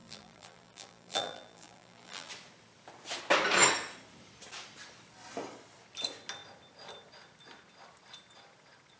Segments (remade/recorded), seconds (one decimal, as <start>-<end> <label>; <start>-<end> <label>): 0.0-2.3 remade; 2.3-9.0 recorded